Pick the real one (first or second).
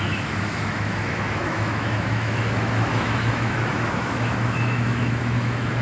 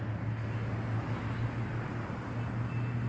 second